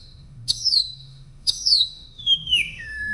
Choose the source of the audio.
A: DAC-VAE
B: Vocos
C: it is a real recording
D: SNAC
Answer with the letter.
A